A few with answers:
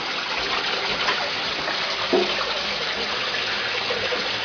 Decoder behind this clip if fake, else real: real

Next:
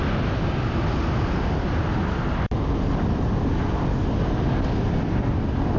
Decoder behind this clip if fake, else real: real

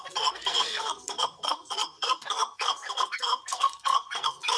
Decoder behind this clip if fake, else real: fake, codec, SNAC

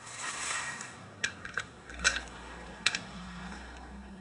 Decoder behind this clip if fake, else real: fake, codec, SNAC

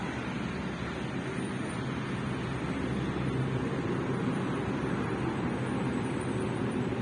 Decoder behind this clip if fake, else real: real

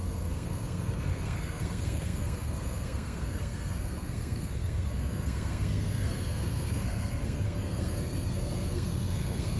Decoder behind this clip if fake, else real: fake, codec, SNAC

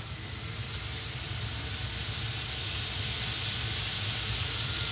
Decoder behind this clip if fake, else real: real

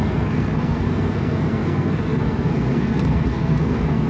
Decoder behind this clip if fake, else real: fake, codec, SNAC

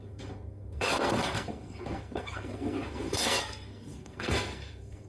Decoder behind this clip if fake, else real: fake, codec, SNAC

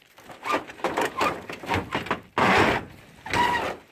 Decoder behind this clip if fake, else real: real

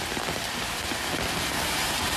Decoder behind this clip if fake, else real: real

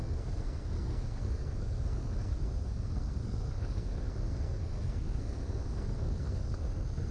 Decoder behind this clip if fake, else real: fake, codec, SNAC